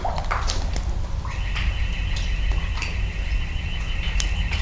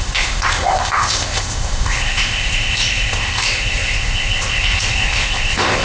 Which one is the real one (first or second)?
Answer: first